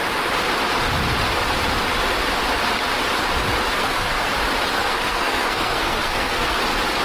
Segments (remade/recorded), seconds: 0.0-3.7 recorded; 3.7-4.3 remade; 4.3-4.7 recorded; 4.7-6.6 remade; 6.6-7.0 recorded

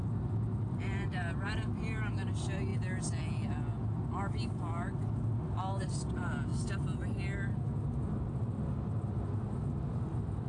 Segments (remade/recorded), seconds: 0.0-10.5 recorded

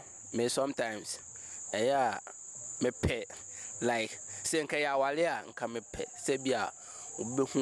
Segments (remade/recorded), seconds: 0.0-7.6 recorded